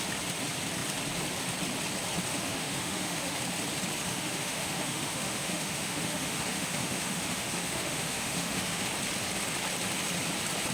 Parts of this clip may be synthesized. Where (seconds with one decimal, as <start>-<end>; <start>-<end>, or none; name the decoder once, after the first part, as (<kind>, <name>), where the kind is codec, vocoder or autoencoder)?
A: 2.3-3.4 (autoencoder, DAC-VAE); 4.1-8.9